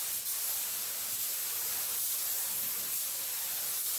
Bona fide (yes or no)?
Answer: yes